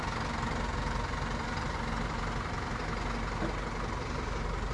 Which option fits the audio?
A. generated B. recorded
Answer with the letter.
B